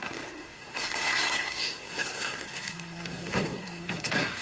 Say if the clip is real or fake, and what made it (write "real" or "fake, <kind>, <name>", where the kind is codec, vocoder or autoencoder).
fake, codec, SNAC